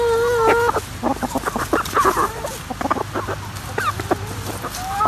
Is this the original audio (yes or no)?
yes